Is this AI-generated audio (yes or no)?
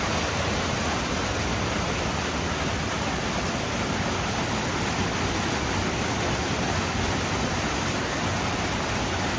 no